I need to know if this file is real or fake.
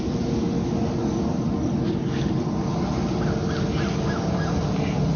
real